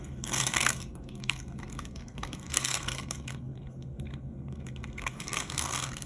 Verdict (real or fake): fake